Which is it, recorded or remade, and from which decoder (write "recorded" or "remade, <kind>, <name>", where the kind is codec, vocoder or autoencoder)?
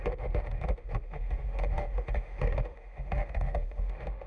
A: remade, autoencoder, DAC-VAE